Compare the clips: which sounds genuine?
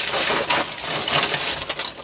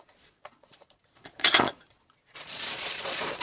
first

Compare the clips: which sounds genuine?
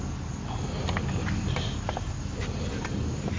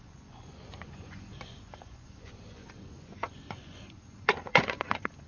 first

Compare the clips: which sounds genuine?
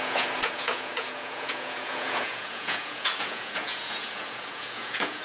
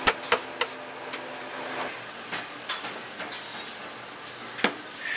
second